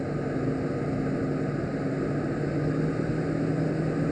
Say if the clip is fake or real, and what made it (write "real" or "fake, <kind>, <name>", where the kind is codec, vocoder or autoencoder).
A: real